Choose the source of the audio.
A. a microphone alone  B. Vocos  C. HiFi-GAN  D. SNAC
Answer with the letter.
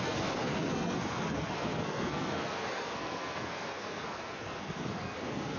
D